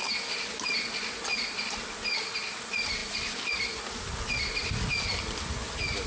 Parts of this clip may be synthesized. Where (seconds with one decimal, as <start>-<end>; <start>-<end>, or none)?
none